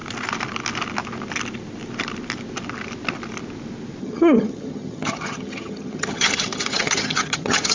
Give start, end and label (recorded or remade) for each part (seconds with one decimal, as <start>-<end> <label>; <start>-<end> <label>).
0.0-4.0 recorded; 4.0-7.7 remade